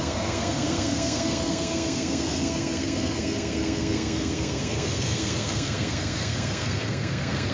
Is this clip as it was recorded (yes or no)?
no